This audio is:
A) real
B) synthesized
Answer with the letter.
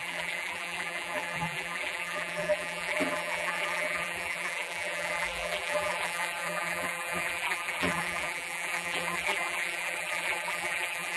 B